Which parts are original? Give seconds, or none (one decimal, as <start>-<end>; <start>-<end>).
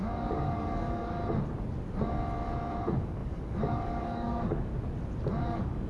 1.2-2.8; 4.7-5.4